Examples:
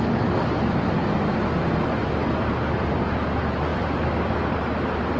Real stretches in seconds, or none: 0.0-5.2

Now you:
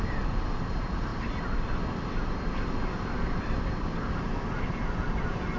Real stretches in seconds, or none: none